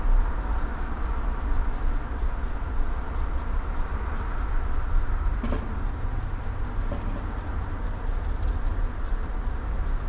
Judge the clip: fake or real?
real